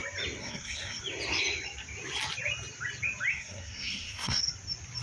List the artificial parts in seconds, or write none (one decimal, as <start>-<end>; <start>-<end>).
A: 0.4-1.0; 3.3-4.4